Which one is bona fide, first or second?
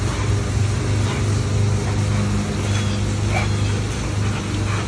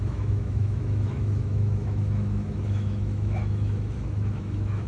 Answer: first